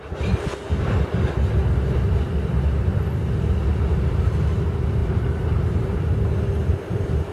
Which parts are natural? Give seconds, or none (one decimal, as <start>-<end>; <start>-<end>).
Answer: 0.0-7.3